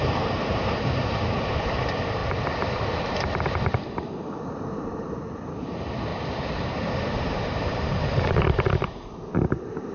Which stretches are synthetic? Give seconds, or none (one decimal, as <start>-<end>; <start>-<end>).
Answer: 0.0-2.2; 5.5-6.1; 6.7-9.9